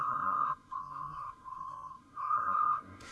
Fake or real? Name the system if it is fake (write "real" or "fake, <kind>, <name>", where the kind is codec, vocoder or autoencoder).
fake, codec, SNAC